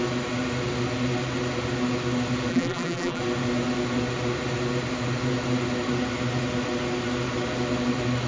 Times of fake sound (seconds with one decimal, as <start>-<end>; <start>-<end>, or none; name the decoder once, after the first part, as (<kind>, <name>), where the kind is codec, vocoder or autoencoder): 2.5-3.2 (vocoder, BigVGAN v2)